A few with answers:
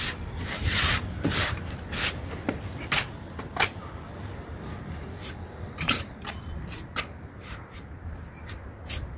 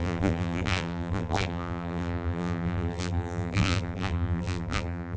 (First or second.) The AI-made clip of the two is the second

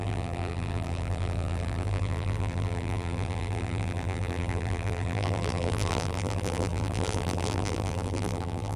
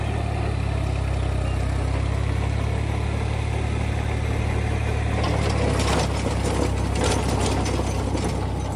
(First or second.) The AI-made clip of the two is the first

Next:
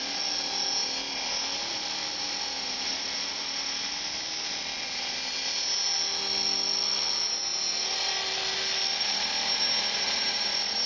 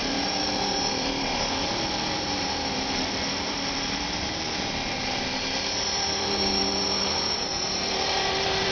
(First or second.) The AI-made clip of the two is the second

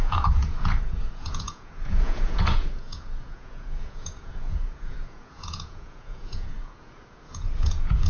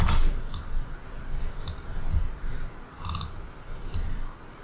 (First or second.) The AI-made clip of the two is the first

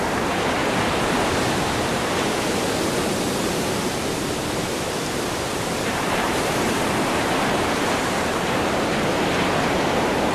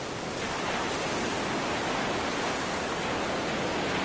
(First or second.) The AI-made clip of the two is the first